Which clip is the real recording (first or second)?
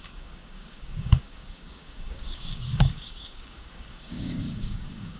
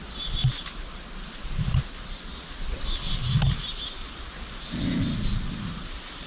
second